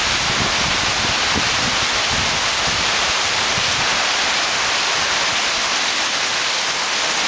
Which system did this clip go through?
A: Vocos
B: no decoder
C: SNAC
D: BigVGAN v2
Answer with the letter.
B